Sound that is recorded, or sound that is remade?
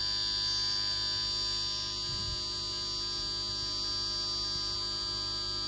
recorded